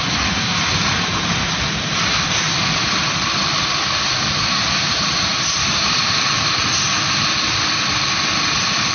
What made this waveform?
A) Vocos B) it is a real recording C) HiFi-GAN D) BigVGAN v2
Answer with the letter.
B